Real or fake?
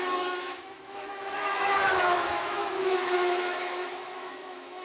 fake